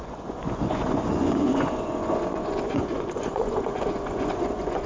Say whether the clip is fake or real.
fake